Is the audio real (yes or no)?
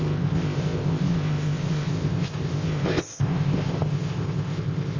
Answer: no